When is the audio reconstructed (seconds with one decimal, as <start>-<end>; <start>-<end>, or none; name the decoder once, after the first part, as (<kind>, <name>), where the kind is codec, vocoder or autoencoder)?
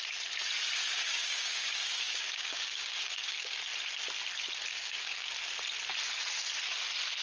0.8-3.6 (codec, DAC); 4.7-5.3